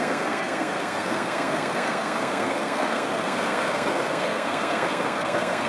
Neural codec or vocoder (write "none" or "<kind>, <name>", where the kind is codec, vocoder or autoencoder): codec, SNAC